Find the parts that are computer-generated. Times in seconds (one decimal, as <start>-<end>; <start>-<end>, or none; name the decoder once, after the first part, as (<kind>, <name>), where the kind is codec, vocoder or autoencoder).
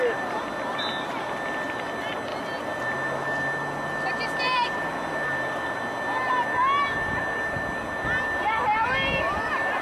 none